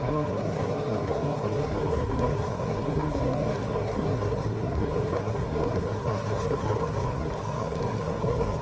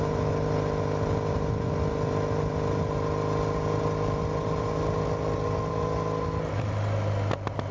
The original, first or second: second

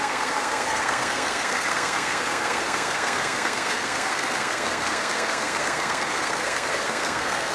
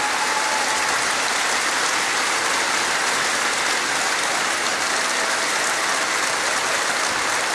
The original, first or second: second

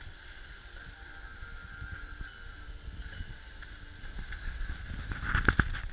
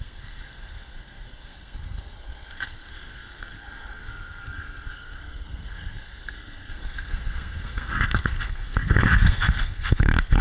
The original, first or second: first